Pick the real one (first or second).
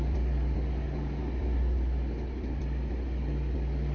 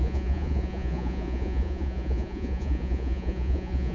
first